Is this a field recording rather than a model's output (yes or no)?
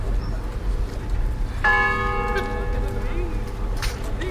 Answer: yes